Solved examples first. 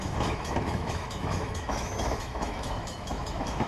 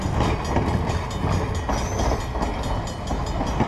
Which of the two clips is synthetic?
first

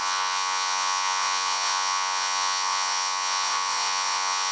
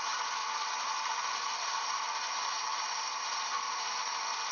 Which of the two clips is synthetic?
first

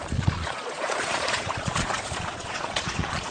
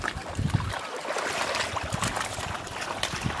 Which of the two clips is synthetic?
first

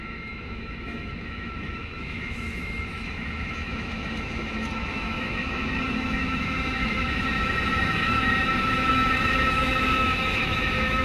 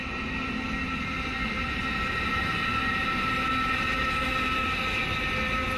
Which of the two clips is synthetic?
first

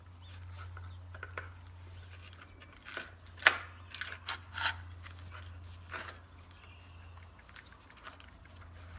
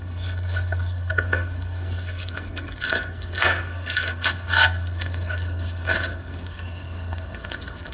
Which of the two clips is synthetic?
second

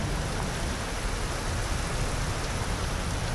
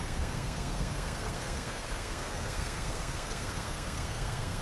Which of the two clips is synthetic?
second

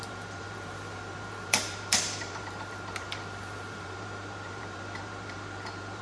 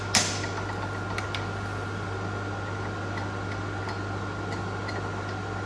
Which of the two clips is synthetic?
first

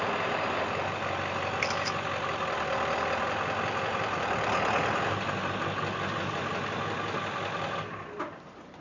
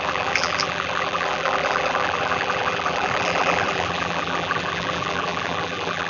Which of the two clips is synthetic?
second